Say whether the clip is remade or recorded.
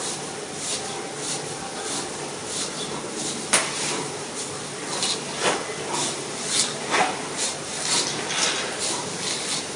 recorded